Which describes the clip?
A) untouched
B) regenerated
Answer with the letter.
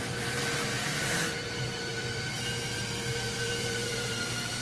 B